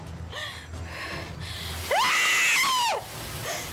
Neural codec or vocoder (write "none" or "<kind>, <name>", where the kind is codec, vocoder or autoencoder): none